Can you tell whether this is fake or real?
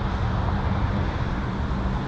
real